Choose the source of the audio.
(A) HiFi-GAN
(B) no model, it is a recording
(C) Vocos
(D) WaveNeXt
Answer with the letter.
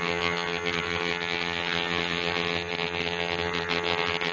A